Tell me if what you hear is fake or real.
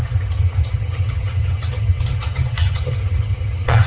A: fake